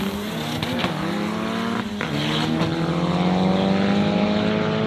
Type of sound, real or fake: real